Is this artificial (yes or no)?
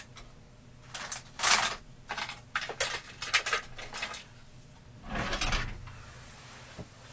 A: no